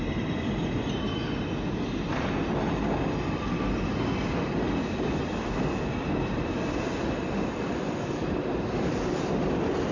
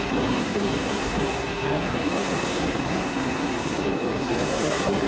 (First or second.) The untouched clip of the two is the first